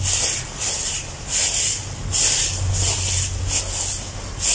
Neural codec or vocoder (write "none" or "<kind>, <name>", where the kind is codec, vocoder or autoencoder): none